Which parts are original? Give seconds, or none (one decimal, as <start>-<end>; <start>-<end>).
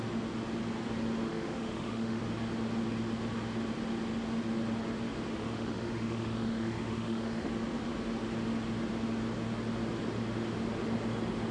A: 0.0-1.3; 2.2-5.3; 7.5-11.5